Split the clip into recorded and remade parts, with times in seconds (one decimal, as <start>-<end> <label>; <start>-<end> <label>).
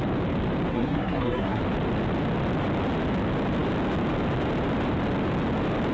0.0-0.7 recorded; 0.7-1.6 remade; 1.6-5.9 recorded